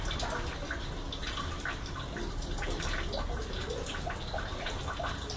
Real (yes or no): yes